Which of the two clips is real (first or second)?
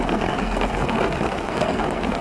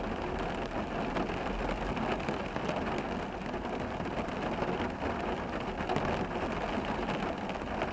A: second